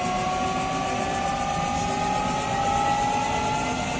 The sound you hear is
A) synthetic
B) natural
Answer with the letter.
B